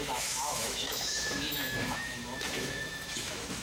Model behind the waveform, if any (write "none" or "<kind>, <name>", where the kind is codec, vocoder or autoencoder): autoencoder, DAC-VAE